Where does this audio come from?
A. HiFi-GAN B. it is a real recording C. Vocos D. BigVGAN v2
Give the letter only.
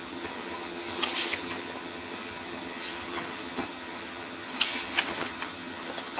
A